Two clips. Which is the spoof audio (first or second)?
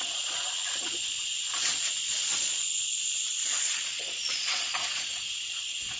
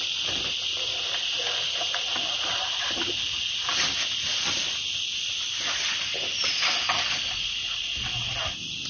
first